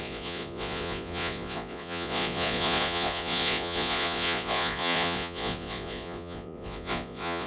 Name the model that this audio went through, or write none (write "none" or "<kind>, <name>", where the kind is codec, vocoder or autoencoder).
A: vocoder, Vocos